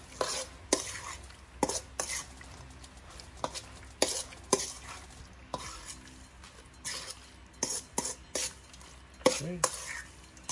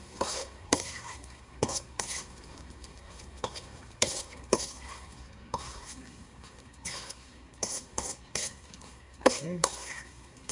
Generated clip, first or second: second